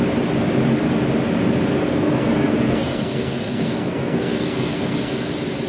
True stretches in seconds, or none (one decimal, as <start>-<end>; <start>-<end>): 0.0-1.9; 5.3-5.7